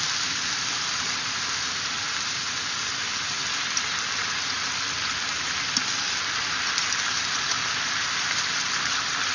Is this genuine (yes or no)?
yes